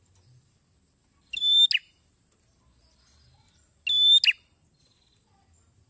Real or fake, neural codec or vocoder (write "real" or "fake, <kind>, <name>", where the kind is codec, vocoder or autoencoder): real